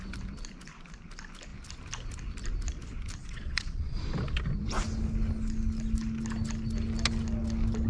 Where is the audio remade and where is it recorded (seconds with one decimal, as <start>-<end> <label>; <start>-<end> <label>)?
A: 0.0-3.2 recorded; 3.2-4.0 remade; 4.0-7.9 recorded